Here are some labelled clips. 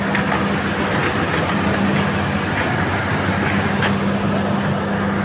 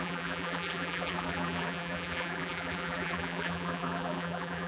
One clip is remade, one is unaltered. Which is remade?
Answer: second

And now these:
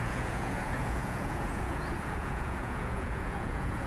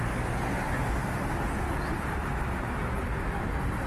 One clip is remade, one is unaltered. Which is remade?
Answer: first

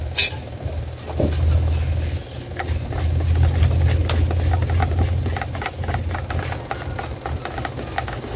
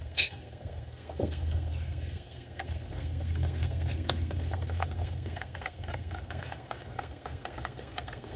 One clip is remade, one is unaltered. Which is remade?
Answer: second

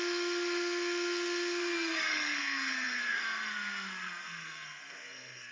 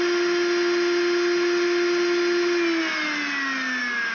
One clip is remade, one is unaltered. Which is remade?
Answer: first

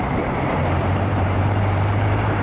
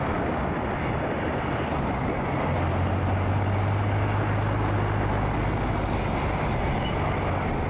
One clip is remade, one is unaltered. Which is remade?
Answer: first